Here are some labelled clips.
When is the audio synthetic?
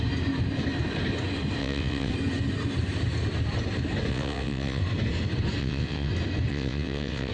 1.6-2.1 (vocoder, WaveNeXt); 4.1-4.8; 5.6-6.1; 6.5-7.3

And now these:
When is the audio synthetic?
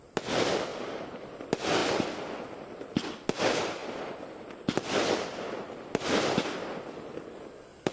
0.7-1.4 (vocoder, BigVGAN v2)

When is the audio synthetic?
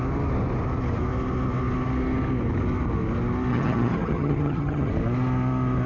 3.5-4.9 (vocoder, HiFi-GAN)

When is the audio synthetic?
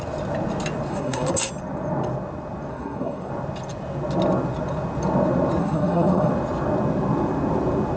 0.9-1.5 (codec, SNAC); 2.7-3.3; 5.6-6.3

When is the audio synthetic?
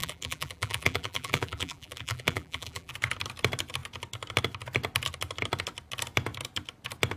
0.0-2.9 (vocoder, BigVGAN v2)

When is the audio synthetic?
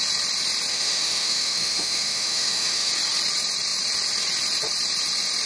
0.7-2.9 (autoencoder, DAC-VAE)